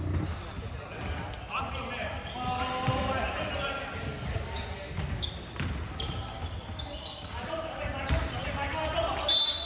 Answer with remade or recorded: recorded